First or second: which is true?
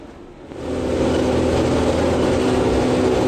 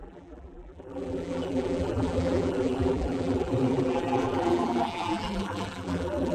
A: first